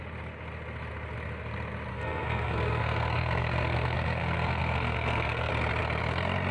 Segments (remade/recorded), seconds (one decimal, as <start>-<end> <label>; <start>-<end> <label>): 0.0-1.9 recorded; 1.9-5.5 remade; 5.5-6.5 recorded